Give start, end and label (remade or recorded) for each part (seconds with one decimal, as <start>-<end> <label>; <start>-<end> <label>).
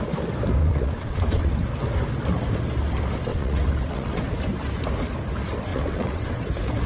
0.0-0.6 recorded; 0.6-1.5 remade; 1.5-3.3 recorded; 3.3-4.2 remade; 4.2-5.7 recorded; 5.7-6.4 remade; 6.4-6.9 recorded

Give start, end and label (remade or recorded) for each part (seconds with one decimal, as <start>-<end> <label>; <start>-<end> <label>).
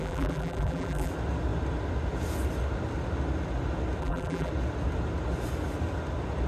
0.0-1.1 remade; 1.1-4.0 recorded; 4.0-4.5 remade; 4.5-6.5 recorded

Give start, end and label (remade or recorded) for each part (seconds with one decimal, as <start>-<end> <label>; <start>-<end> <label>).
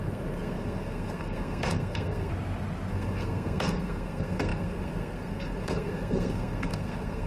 0.0-2.3 remade; 2.3-2.9 recorded; 2.9-7.3 remade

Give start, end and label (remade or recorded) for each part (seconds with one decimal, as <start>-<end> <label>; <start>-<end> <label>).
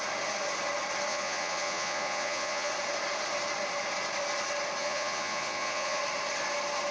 0.0-1.1 recorded; 1.1-2.7 remade; 2.7-4.8 recorded; 4.8-6.0 remade; 6.0-6.9 recorded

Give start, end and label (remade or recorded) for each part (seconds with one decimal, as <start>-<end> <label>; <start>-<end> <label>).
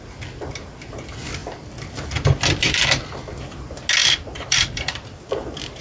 0.0-1.4 recorded; 1.4-3.3 remade; 3.3-4.0 recorded; 4.0-5.2 remade; 5.2-5.8 recorded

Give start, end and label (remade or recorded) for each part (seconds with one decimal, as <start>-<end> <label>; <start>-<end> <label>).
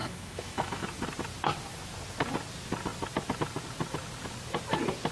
0.0-0.8 remade; 0.8-5.1 recorded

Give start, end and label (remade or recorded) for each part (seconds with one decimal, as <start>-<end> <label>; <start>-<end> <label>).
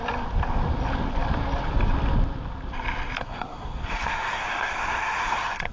0.0-3.2 recorded; 3.2-5.7 remade